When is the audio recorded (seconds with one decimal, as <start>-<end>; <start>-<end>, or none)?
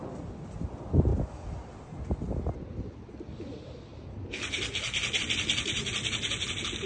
0.0-6.9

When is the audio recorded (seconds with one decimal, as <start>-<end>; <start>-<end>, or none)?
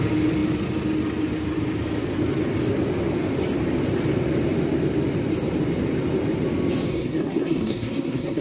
0.0-6.9